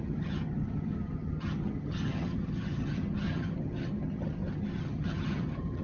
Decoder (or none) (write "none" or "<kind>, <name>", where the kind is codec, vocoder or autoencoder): vocoder, HiFi-GAN